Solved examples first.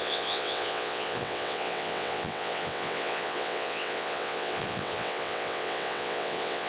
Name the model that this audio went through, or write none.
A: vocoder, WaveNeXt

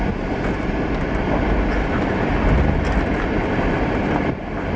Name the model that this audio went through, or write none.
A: none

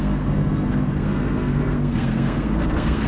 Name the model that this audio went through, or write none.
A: codec, SNAC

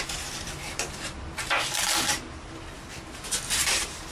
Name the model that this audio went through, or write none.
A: none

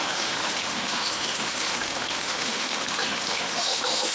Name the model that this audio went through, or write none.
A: autoencoder, DAC-VAE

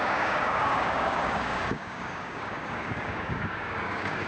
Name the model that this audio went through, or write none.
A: codec, DAC